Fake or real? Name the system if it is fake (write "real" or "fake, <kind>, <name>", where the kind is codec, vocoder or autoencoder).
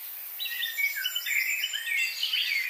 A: real